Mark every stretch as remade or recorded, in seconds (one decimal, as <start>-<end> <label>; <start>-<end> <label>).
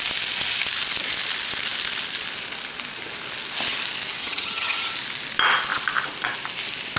0.0-4.2 recorded; 4.2-4.9 remade; 4.9-7.0 recorded